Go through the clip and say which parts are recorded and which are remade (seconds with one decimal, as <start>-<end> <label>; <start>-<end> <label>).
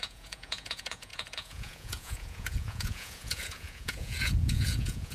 0.0-5.1 remade